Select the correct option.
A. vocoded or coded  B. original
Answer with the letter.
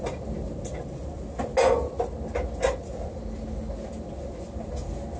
B